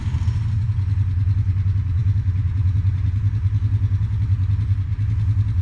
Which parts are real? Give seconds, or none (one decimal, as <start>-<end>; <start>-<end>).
0.0-5.6